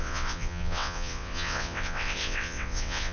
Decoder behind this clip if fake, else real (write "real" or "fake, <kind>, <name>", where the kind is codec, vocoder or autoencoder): fake, vocoder, WaveNeXt